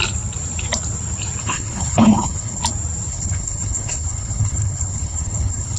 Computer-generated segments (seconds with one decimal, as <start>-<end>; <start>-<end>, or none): 1.4-2.6; 3.1-5.8